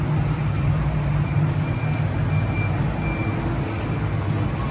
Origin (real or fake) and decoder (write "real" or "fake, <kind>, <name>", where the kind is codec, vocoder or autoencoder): real